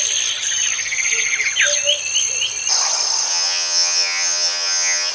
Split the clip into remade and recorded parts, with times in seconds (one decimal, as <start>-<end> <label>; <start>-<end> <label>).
0.0-3.3 recorded; 3.3-5.1 remade